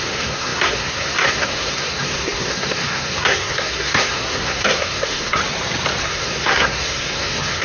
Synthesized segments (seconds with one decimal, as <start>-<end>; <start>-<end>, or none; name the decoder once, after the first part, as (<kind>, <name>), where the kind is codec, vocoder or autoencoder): 0.0-5.4 (codec, SNAC); 6.0-7.6